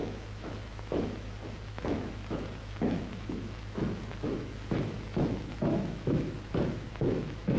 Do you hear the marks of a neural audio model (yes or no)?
yes